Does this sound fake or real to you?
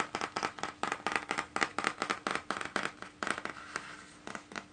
real